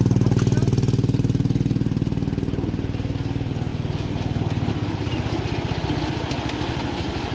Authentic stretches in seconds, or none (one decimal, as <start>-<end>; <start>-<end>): 0.0-7.3